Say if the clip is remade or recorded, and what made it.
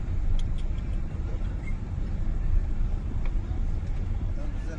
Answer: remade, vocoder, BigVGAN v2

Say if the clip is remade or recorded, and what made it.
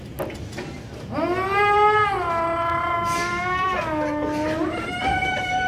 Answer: recorded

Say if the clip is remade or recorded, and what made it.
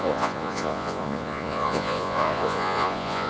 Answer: remade, vocoder, Vocos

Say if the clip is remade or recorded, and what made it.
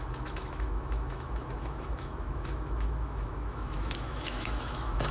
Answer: remade, autoencoder, DAC-VAE